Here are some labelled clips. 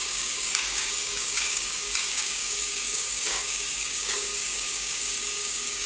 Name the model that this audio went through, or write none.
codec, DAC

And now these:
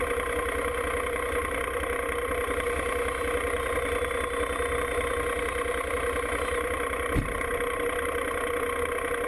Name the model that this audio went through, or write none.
none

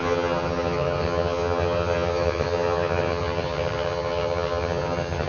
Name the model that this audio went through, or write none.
vocoder, HiFi-GAN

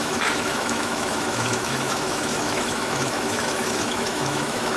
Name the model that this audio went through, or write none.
autoencoder, DAC-VAE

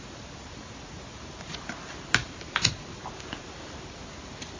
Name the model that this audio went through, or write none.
none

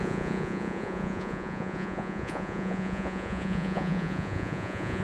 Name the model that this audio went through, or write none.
vocoder, Vocos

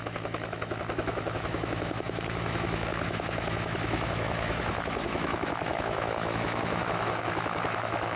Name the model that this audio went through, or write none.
autoencoder, DAC-VAE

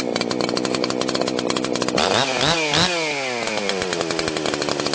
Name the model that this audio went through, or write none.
none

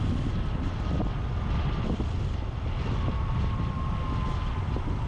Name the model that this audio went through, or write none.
none